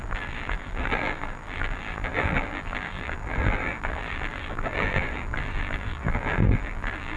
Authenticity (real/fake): fake